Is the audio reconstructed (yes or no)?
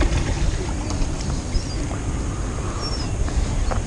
no